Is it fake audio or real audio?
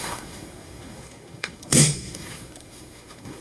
fake